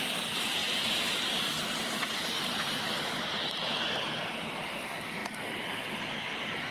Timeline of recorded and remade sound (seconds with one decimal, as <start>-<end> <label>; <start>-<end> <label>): 0.0-5.2 remade; 5.2-6.7 recorded